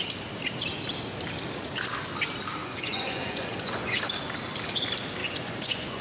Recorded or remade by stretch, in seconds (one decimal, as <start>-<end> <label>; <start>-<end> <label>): 0.0-2.6 recorded; 2.6-4.0 remade; 4.0-5.2 recorded; 5.2-6.0 remade